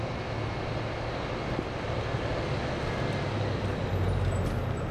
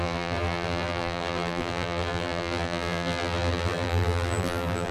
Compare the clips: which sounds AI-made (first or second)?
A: second